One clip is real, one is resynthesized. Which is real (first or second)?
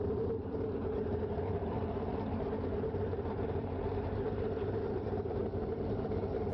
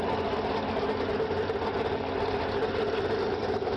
second